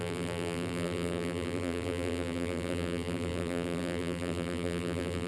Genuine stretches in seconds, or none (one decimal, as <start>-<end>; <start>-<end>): none